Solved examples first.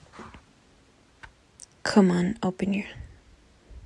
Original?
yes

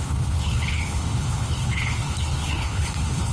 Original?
no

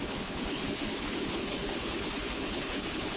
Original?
no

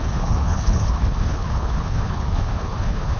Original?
no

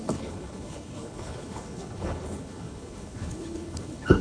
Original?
no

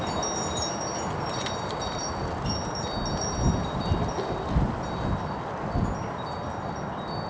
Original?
yes